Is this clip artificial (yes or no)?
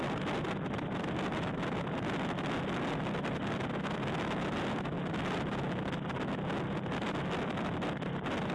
no